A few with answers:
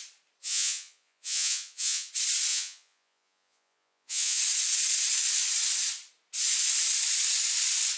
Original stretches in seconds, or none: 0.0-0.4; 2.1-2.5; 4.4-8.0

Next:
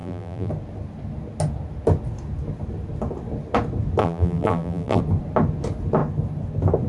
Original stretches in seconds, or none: 0.5-4.0; 5.0-6.9

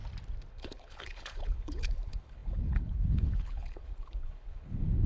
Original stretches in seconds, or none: 0.0-0.5

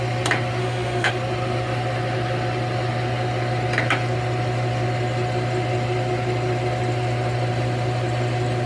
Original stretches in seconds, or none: 0.0-0.6; 1.1-8.7

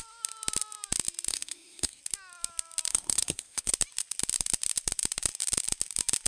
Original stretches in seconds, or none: 0.0-1.3; 2.0-2.9; 3.7-6.3

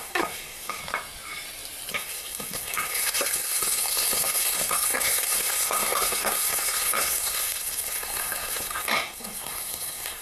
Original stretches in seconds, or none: 0.8-1.9